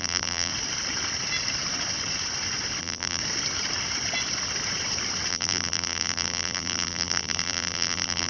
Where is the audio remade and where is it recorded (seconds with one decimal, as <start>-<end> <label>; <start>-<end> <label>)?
0.0-0.5 remade; 0.5-2.8 recorded; 2.8-3.2 remade; 3.2-5.3 recorded; 5.3-8.3 remade